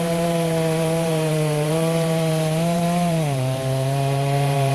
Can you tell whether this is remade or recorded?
remade